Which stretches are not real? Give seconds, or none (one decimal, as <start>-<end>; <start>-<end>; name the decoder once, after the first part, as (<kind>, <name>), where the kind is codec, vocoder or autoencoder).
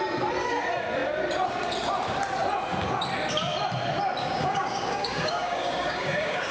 4.2-6.5 (codec, DAC)